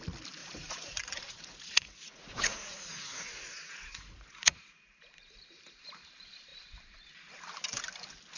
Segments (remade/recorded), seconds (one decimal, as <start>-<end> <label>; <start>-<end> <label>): 0.0-0.4 recorded; 0.4-5.0 remade; 5.0-8.4 recorded